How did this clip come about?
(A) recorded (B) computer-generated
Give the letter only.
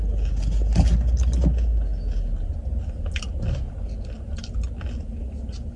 A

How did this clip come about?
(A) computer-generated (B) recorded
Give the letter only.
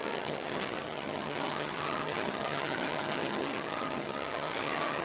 A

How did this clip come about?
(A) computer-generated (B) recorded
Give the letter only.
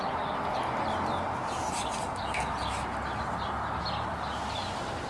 B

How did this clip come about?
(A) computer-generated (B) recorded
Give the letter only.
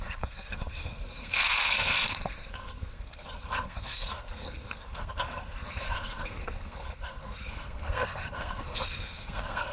A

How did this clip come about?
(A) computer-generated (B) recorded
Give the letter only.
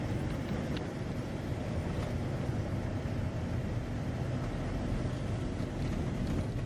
B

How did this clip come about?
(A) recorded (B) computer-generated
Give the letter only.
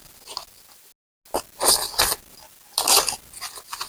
A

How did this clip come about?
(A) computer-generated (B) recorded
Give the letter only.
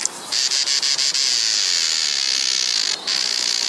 B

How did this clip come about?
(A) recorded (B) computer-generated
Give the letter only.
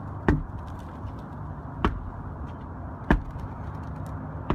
A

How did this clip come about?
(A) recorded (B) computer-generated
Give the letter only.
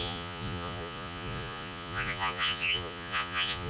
B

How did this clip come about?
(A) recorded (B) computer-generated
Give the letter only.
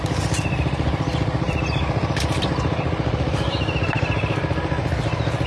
A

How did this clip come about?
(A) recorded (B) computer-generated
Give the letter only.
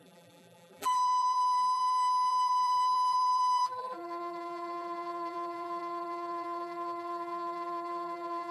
B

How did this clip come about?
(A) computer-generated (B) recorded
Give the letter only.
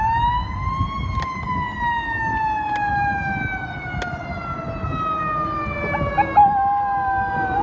B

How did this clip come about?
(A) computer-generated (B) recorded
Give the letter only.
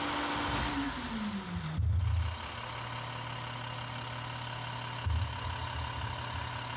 B